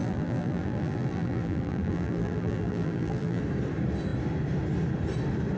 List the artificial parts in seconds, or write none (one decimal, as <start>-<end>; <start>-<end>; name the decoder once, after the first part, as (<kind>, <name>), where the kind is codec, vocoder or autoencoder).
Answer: 0.0-3.4 (vocoder, BigVGAN v2)